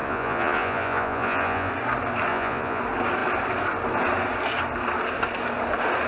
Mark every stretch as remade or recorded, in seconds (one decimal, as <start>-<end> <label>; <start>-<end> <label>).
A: 0.0-1.7 remade; 1.7-2.3 recorded; 2.3-2.8 remade; 2.8-6.1 recorded